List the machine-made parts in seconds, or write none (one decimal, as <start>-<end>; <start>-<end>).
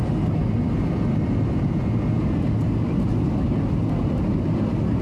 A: none